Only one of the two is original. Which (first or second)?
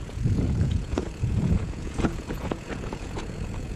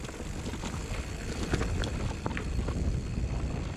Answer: second